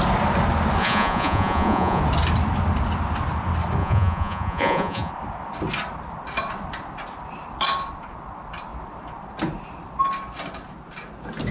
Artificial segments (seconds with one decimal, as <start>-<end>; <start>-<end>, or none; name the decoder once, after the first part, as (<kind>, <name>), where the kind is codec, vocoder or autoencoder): 0.8-2.0 (vocoder, Vocos); 3.8-5.1